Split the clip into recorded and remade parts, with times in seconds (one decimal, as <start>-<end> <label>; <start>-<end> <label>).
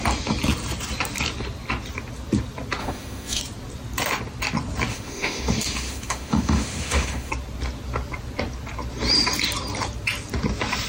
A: 0.0-2.8 recorded; 2.8-3.4 remade; 3.4-4.9 recorded; 4.9-7.3 remade; 7.3-10.9 recorded